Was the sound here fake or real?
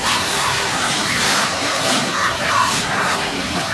fake